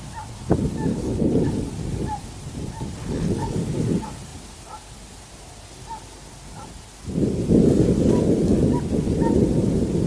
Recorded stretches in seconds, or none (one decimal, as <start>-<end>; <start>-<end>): 0.0-0.9; 1.5-3.0; 3.6-10.1

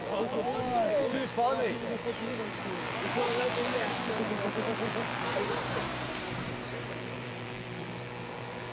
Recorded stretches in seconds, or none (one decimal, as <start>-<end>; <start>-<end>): 5.3-6.9

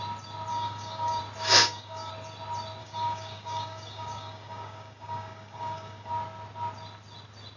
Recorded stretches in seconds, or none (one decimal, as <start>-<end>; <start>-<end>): 0.0-0.5; 1.2-1.6; 2.1-2.8; 6.1-7.6

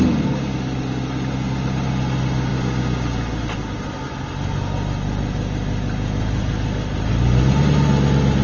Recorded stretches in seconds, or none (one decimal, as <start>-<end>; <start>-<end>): 0.0-8.4

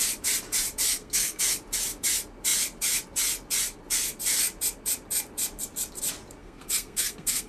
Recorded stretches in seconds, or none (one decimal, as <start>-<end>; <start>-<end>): 0.0-0.9; 1.4-6.4